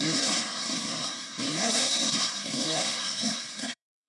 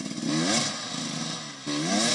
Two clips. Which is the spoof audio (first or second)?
first